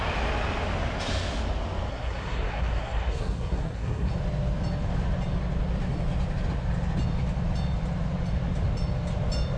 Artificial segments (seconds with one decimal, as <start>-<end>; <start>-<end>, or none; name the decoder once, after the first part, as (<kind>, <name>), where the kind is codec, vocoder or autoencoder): 1.9-4.1 (codec, SNAC)